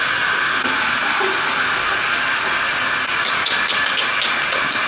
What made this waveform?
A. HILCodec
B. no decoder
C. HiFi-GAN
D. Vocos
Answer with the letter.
B